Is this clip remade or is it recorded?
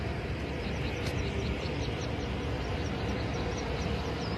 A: recorded